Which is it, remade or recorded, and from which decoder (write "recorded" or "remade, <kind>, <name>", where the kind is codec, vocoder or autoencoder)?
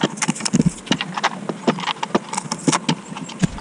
recorded